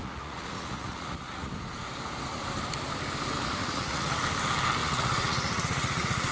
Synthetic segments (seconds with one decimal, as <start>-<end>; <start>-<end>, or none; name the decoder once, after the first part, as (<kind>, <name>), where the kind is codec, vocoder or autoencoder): 0.0-1.5 (vocoder, Vocos); 3.6-4.1; 4.8-6.3